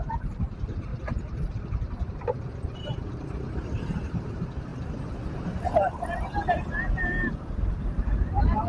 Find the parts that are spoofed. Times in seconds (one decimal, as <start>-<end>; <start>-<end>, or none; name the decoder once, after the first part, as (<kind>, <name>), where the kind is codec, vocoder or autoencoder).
0.0-0.9 (vocoder, BigVGAN v2); 1.6-4.7